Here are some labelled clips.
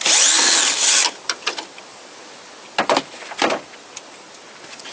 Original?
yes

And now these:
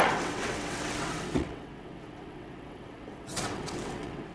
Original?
no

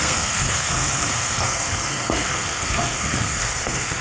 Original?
no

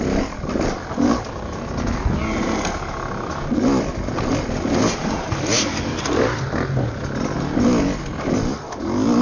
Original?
yes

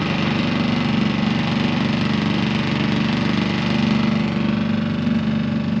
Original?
yes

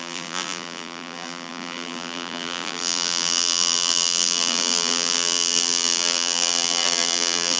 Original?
no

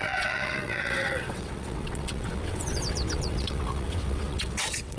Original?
no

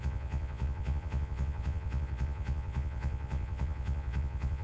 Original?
no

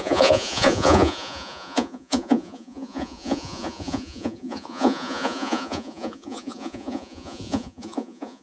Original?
no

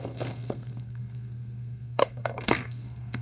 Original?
no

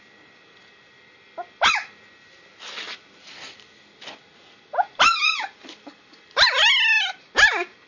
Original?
yes